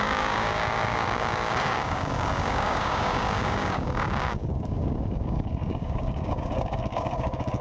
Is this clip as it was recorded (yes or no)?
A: no